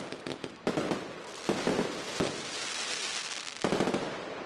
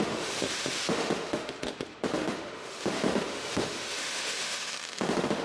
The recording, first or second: first